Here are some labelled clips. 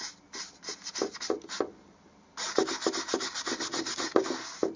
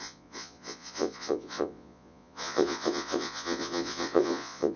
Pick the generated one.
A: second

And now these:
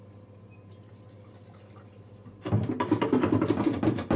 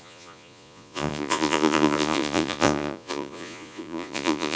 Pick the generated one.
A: second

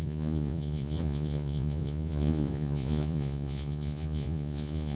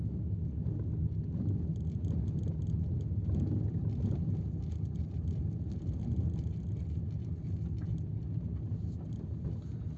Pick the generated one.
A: first